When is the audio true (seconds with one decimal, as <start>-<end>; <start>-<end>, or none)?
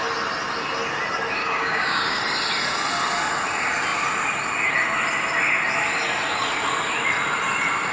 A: 0.0-1.4; 2.2-7.9